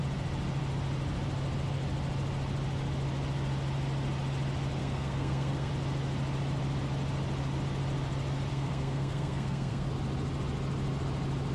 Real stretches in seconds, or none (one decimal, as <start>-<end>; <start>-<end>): 0.0-4.8; 5.7-8.5; 9.9-11.5